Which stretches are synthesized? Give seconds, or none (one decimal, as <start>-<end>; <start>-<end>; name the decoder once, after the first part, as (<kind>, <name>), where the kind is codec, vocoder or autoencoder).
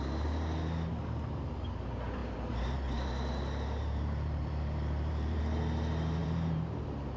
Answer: 2.2-5.4 (vocoder, BigVGAN v2); 6.2-6.8